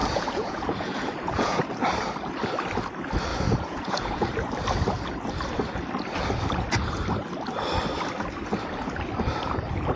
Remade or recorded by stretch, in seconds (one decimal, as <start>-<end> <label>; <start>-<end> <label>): 0.0-1.6 remade; 1.6-3.3 recorded; 3.3-4.5 remade; 4.5-10.0 recorded

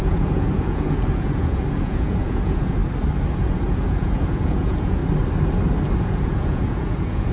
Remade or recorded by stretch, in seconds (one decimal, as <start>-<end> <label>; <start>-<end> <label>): 0.0-2.8 remade; 2.8-3.4 recorded; 3.4-5.0 remade; 5.0-5.9 recorded; 5.9-7.3 remade